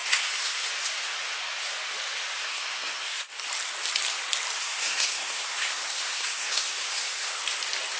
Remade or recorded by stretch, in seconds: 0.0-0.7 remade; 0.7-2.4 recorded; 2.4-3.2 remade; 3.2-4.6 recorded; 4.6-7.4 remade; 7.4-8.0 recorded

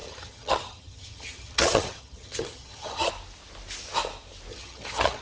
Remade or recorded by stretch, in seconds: 0.0-3.1 remade; 3.1-4.5 recorded; 4.5-5.2 remade

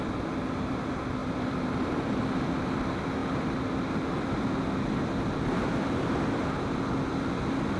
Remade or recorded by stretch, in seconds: 0.0-1.2 recorded; 1.2-2.2 remade; 2.2-7.8 recorded

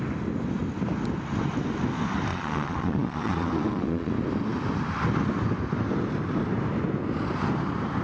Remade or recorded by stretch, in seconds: 0.0-2.3 recorded; 2.3-4.1 remade; 4.1-8.0 recorded